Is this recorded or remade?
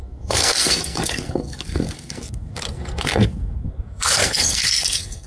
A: remade